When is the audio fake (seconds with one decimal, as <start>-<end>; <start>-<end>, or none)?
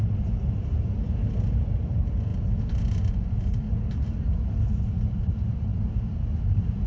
none